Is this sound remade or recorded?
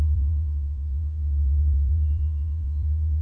remade